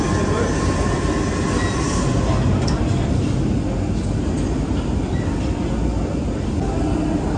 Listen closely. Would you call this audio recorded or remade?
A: recorded